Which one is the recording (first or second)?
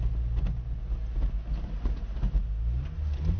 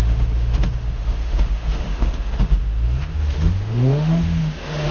first